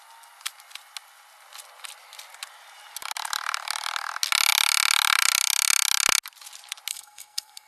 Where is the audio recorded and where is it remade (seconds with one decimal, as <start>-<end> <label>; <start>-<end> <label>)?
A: 0.0-6.9 recorded; 6.9-7.7 remade